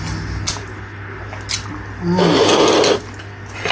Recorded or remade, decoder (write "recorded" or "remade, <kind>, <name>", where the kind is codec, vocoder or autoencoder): recorded